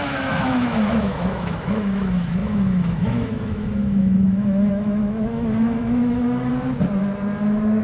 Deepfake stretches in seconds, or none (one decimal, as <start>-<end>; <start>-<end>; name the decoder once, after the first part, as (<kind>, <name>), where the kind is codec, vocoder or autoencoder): 0.0-6.5 (autoencoder, DAC-VAE)